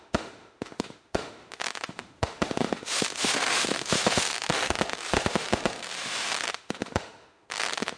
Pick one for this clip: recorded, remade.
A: remade